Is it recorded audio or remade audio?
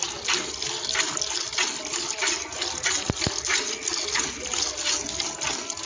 recorded